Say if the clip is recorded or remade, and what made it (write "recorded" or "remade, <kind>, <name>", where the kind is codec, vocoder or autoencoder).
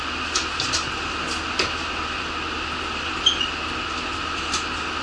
recorded